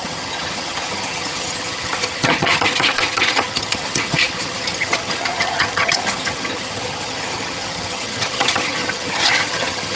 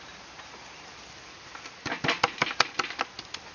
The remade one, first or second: first